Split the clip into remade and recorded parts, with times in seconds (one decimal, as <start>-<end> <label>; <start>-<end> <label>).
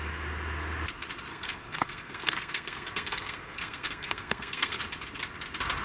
0.0-1.3 recorded; 1.3-4.8 remade; 4.8-5.8 recorded